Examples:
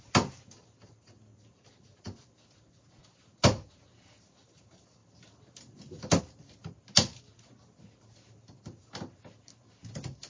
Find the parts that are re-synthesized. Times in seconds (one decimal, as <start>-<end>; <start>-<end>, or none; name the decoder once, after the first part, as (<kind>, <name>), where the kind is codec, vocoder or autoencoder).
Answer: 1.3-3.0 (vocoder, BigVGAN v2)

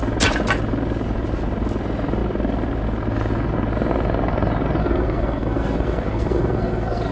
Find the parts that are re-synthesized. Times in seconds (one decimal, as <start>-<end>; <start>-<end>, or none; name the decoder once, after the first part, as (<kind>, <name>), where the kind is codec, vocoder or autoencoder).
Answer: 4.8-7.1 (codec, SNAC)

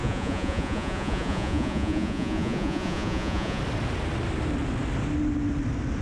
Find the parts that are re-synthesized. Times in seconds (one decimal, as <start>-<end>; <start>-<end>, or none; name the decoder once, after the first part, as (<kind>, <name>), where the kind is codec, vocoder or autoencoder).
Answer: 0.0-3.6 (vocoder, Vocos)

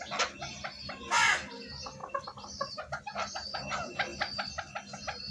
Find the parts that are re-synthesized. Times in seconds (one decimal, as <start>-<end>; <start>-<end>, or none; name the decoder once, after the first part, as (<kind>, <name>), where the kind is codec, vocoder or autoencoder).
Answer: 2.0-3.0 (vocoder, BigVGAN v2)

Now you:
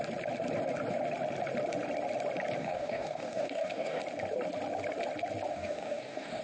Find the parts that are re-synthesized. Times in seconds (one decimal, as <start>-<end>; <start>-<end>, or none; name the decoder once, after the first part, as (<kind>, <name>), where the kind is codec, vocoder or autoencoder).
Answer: 2.6-4.0 (codec, DAC); 5.5-6.4

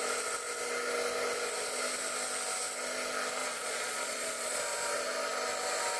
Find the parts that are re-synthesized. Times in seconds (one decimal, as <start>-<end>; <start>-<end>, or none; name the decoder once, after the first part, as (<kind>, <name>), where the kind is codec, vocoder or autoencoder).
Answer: 3.4-4.6 (vocoder, Vocos)